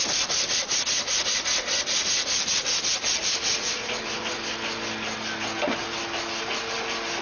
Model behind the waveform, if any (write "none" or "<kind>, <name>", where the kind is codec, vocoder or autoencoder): none